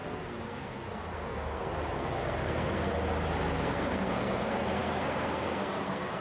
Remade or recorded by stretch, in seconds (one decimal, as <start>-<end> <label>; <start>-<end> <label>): 0.0-2.9 remade; 2.9-3.5 recorded; 3.5-6.2 remade